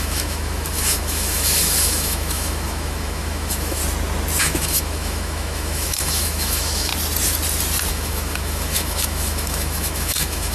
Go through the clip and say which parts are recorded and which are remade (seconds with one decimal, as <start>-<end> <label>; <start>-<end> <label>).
0.0-3.8 remade; 3.8-4.4 recorded; 4.4-6.9 remade; 6.9-7.9 recorded; 7.9-10.5 remade